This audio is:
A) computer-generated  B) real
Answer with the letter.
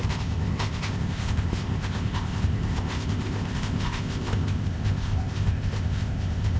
A